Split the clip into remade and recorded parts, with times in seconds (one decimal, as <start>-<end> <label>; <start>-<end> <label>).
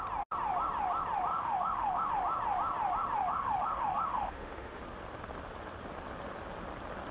0.0-1.3 recorded; 1.3-2.1 remade; 2.1-3.2 recorded; 3.2-4.8 remade; 4.8-7.1 recorded